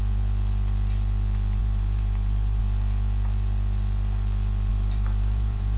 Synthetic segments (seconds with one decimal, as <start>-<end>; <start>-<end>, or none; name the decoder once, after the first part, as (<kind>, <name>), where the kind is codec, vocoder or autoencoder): 1.6-2.6 (vocoder, BigVGAN v2); 4.7-5.8